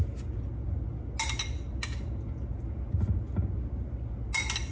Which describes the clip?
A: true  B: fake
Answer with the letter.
A